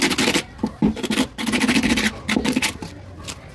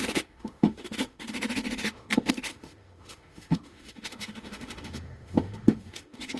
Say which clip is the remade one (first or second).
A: second